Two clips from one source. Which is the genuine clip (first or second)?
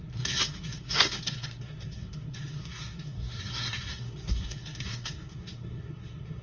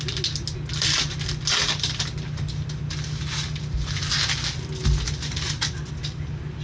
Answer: second